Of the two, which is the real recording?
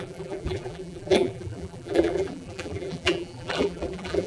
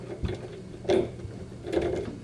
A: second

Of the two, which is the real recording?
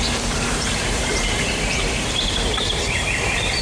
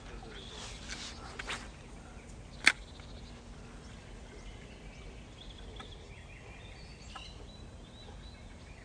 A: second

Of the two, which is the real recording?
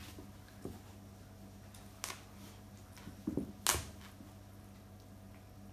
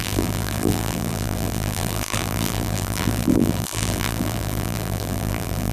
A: first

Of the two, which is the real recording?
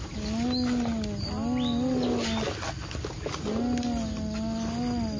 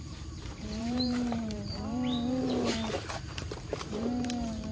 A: first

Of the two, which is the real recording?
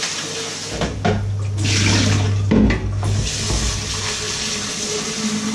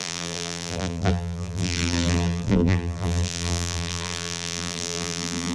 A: first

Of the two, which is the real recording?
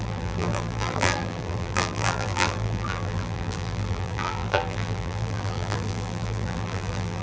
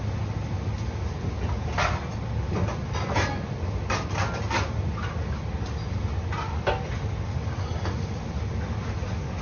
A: second